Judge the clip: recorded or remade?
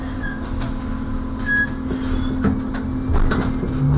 recorded